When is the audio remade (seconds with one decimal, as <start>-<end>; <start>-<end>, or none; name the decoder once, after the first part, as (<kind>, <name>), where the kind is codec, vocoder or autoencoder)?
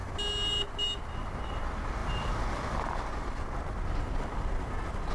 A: none